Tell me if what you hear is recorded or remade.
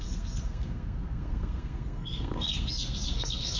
remade